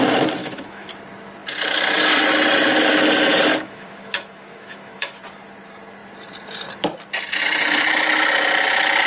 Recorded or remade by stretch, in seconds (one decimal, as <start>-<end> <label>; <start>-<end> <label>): 0.0-0.4 recorded; 0.4-0.9 remade; 0.9-3.5 recorded; 3.5-5.2 remade; 5.2-9.1 recorded